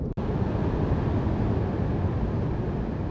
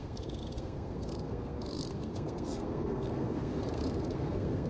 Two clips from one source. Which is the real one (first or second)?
first